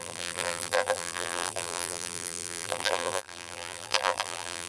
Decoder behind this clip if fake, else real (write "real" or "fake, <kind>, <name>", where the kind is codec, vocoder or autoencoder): fake, vocoder, BigVGAN v2